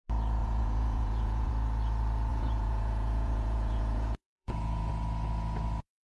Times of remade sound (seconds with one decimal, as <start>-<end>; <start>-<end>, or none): 0.4-1.5; 2.3-4.9